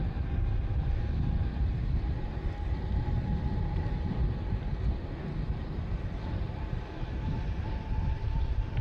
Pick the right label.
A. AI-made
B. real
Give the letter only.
A